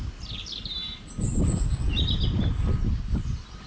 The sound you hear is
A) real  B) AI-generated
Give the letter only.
A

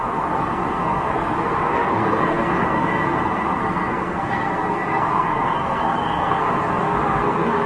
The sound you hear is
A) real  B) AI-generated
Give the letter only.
B